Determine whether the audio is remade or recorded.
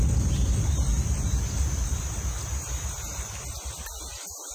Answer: recorded